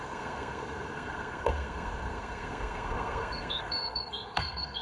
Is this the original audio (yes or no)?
no